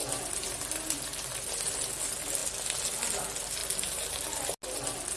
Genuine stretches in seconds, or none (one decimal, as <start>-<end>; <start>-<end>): 0.0-5.2